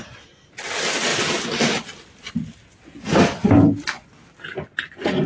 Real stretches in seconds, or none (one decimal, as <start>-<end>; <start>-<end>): 0.0-5.3